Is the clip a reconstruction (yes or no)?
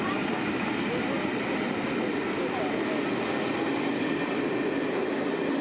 no